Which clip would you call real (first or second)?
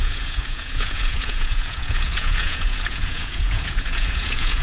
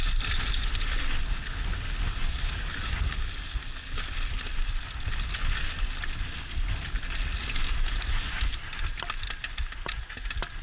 second